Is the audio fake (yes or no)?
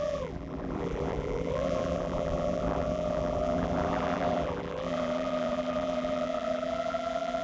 yes